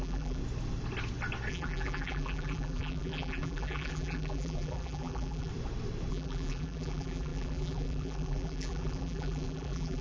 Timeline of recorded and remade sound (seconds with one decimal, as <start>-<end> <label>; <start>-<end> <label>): 0.0-0.4 remade; 0.4-1.5 recorded; 1.5-5.5 remade; 5.5-6.1 recorded; 6.1-10.0 remade